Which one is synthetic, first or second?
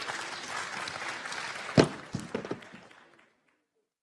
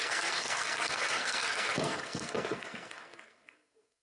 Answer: second